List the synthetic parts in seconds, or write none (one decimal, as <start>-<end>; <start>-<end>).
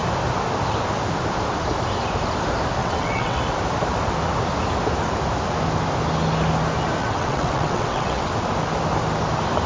2.8-3.4; 7.0-8.3